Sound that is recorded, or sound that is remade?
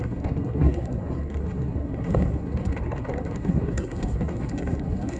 remade